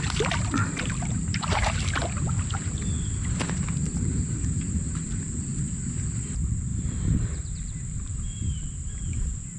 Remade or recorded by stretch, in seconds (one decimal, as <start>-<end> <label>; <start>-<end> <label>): 0.0-0.6 recorded; 0.6-1.7 remade; 1.7-3.8 recorded; 3.8-4.8 remade; 4.8-6.7 recorded; 6.7-8.9 remade; 8.9-9.6 recorded